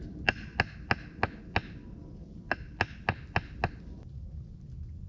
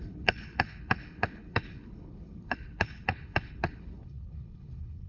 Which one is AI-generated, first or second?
second